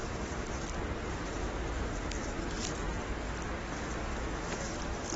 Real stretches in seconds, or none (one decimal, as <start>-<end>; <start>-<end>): 0.0-4.1; 4.7-5.2